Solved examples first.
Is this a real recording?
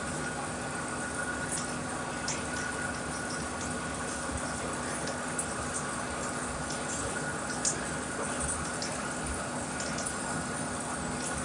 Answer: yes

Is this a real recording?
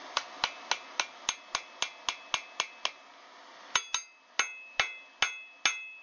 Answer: yes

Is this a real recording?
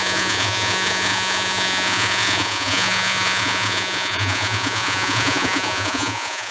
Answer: no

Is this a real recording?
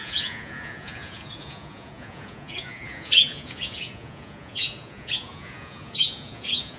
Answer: no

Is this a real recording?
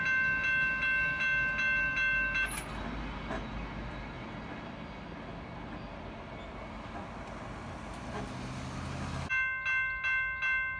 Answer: yes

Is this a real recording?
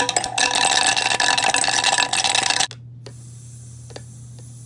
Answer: yes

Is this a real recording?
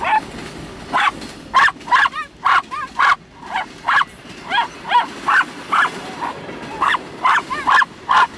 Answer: yes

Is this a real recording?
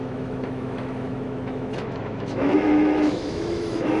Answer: no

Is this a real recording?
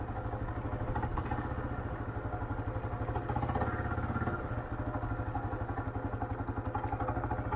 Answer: yes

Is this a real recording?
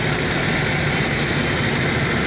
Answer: yes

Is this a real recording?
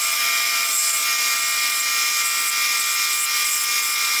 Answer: yes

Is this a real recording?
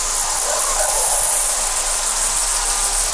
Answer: yes